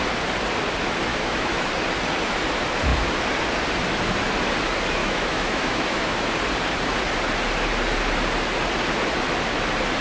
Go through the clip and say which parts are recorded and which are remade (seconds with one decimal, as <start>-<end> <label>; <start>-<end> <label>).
0.0-1.1 recorded; 1.1-1.7 remade; 1.7-5.0 recorded; 5.0-6.3 remade; 6.3-10.0 recorded